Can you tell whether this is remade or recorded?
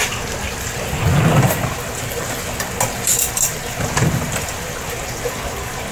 recorded